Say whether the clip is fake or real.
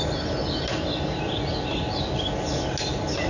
real